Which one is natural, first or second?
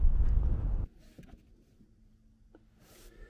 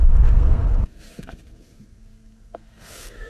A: first